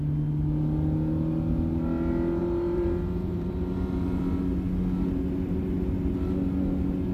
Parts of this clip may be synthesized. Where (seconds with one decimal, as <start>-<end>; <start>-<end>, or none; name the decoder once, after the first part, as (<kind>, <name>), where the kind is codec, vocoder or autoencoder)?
2.4-4.2 (vocoder, BigVGAN v2)